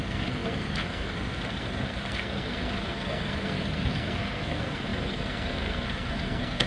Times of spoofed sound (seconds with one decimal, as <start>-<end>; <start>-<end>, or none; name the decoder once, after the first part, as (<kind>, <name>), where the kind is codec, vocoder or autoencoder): 0.0-6.7 (codec, SNAC)